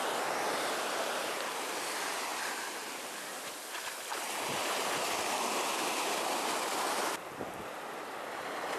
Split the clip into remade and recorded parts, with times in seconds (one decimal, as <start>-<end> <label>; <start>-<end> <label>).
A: 0.0-8.8 recorded